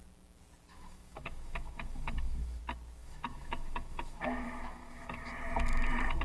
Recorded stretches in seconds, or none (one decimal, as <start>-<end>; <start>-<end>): 0.0-0.7; 2.6-3.0; 5.3-6.2